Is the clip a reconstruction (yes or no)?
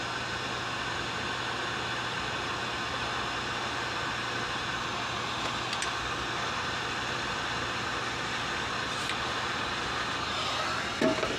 no